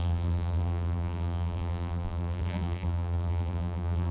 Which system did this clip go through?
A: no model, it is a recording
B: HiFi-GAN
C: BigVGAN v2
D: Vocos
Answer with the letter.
C